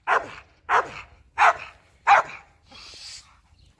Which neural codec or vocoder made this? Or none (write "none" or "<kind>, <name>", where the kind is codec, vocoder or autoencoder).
none